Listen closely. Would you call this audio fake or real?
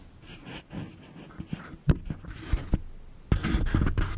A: real